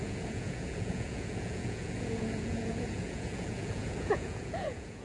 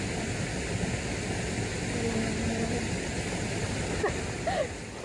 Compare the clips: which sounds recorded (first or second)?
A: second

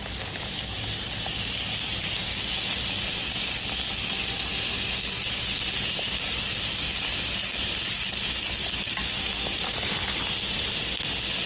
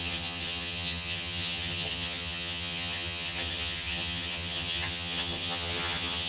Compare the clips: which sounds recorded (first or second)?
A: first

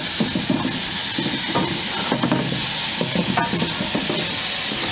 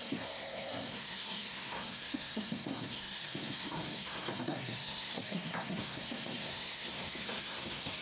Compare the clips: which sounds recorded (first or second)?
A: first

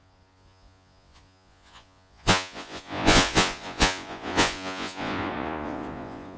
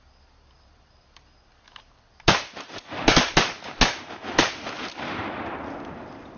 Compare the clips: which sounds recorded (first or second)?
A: second